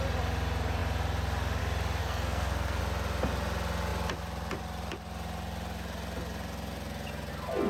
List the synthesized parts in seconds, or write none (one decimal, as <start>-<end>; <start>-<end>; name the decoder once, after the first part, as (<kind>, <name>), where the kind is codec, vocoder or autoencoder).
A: 2.0-2.8 (codec, SNAC)